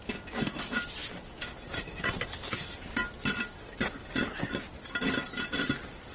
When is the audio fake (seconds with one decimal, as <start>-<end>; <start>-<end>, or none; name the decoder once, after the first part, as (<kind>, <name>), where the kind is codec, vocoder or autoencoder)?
none